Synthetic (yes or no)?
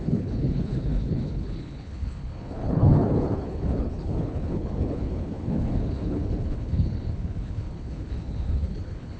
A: yes